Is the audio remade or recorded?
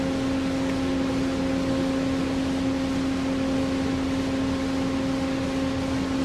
recorded